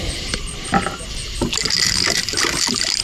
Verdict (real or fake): real